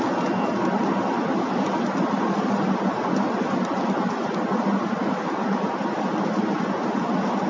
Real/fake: real